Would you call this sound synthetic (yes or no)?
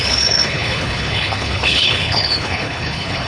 yes